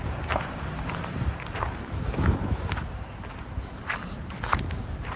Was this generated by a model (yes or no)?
yes